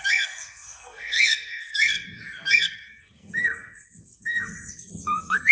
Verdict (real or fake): fake